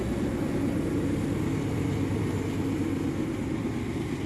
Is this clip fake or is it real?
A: real